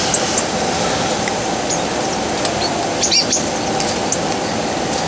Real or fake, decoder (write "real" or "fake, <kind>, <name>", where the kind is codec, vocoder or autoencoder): real